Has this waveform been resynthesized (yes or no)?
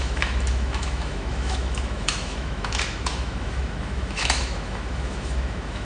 yes